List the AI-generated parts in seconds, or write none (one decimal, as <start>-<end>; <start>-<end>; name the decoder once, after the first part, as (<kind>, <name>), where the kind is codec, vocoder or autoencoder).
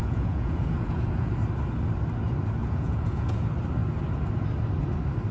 0.0-1.3 (vocoder, Vocos); 2.6-3.4